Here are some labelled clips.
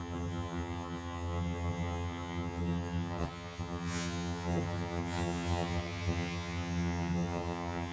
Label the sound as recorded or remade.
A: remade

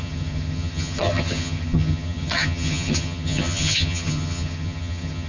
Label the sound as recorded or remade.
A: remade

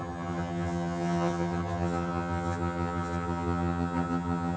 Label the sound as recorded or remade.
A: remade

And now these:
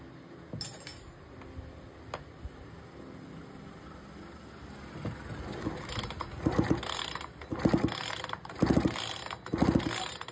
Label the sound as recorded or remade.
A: recorded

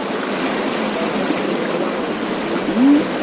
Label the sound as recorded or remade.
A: recorded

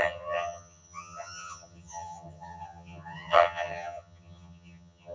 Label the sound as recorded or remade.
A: remade